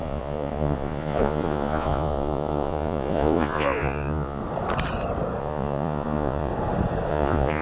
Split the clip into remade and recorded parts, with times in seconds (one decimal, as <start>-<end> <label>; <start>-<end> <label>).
0.0-4.4 remade; 4.4-5.4 recorded; 5.4-6.5 remade; 6.5-7.1 recorded; 7.1-7.6 remade